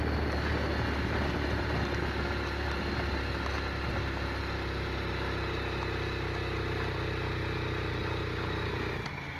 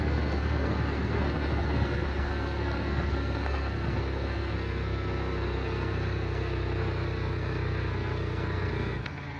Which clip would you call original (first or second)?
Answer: first